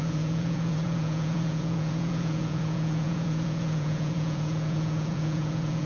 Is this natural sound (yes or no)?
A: no